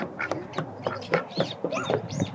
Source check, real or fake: fake